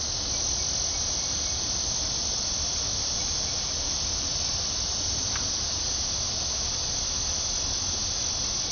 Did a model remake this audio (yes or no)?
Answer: no